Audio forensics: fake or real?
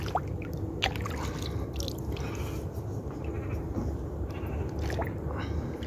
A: real